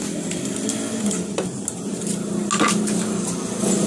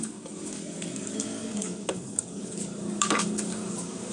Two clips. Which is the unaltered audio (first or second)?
first